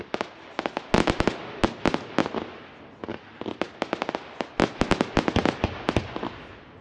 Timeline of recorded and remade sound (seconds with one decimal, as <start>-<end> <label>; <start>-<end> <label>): 0.0-6.8 recorded